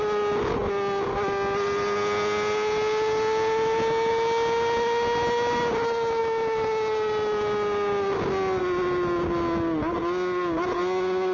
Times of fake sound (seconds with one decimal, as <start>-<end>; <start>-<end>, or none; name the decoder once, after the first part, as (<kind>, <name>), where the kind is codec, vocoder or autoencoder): none